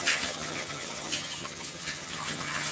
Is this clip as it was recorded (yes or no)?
no